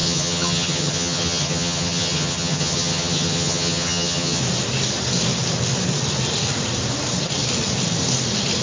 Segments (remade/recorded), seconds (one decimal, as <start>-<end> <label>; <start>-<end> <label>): 0.0-4.4 remade; 4.4-8.6 recorded